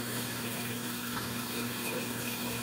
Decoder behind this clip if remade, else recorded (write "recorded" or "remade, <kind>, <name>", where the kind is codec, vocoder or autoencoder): remade, codec, DAC